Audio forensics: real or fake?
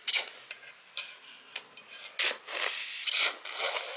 real